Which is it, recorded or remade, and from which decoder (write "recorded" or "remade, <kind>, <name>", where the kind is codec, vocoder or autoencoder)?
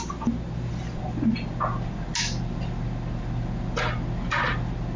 recorded